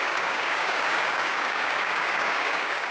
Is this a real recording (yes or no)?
no